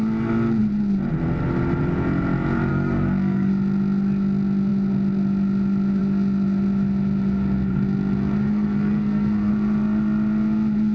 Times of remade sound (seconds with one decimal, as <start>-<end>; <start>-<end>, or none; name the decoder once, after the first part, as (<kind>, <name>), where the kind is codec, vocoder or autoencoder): 2.7-3.5 (codec, SNAC); 8.5-9.5